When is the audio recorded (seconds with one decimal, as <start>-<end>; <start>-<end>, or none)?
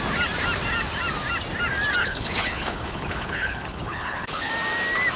0.0-2.0; 4.5-5.2